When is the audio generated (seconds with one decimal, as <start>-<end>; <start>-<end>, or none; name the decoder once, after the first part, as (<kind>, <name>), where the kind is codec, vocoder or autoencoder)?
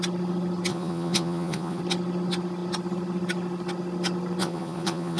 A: 0.7-1.8 (vocoder, Vocos); 4.4-5.2